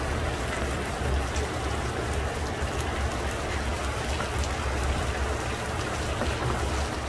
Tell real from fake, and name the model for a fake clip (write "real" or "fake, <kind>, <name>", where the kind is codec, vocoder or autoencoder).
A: real